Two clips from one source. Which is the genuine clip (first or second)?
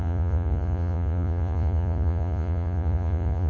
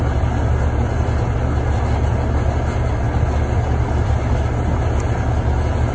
second